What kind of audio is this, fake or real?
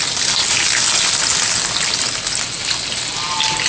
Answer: real